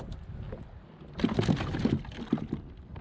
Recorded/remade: recorded